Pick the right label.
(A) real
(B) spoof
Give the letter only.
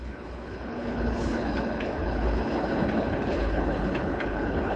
B